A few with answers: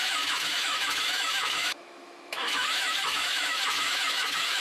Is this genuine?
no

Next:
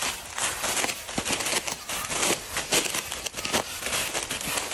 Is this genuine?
yes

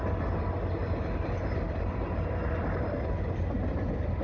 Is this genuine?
yes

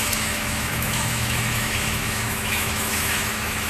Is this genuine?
no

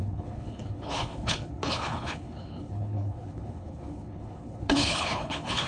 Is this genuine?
no